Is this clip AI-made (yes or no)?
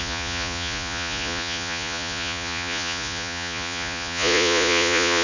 yes